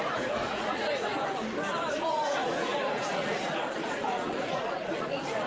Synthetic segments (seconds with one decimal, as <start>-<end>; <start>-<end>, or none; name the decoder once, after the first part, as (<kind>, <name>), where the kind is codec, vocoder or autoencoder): 0.0-1.1 (vocoder, Vocos); 1.9-5.5